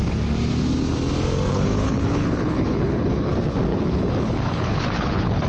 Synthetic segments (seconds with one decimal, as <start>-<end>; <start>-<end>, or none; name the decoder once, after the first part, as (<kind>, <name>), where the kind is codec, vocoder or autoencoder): 1.5-3.3 (codec, HILCodec); 3.7-5.5